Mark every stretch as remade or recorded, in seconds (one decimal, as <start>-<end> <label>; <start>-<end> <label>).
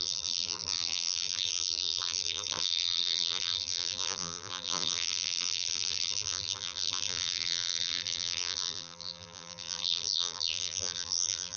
0.0-11.6 remade